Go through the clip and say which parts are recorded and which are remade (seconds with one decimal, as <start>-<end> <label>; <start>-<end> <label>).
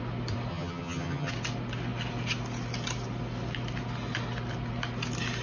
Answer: 0.0-0.5 recorded; 0.5-1.3 remade; 1.3-5.4 recorded